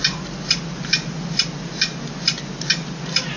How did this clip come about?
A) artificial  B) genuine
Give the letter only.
B